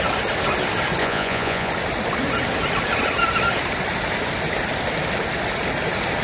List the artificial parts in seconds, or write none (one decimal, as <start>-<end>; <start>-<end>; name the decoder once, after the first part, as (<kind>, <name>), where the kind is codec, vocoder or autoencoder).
1.0-1.7 (vocoder, Vocos)